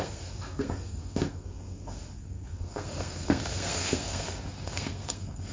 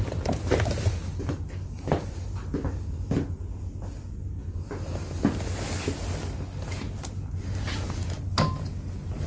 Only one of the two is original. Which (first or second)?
second